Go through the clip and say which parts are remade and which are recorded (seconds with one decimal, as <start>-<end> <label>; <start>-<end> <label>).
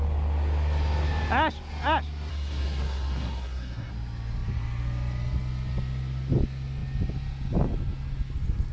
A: 0.0-2.3 recorded; 2.3-3.9 remade; 3.9-8.7 recorded